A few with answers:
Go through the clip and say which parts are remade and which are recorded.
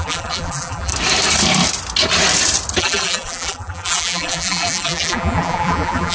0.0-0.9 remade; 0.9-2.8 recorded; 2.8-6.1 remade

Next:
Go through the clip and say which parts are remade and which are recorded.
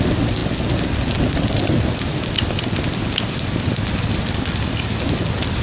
0.0-0.4 recorded; 0.4-1.2 remade; 1.2-2.1 recorded; 2.1-5.6 remade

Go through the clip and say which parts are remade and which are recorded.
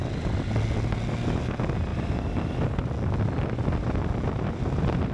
0.0-5.1 recorded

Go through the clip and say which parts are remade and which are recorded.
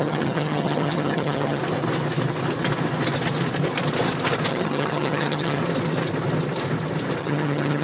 0.0-1.6 remade; 1.6-4.5 recorded; 4.5-5.6 remade; 5.6-7.2 recorded; 7.2-7.8 remade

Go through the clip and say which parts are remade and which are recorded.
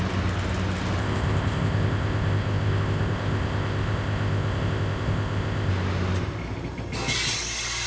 0.0-1.0 recorded; 1.0-5.7 remade; 5.7-7.9 recorded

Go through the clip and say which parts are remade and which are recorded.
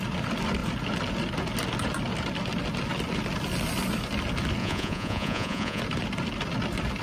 0.0-4.6 recorded; 4.6-5.8 remade; 5.8-7.0 recorded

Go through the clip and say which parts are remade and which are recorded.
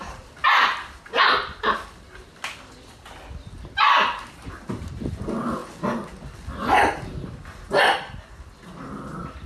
0.0-9.5 recorded